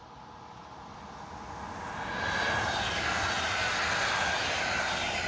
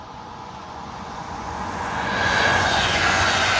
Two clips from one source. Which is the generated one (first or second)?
second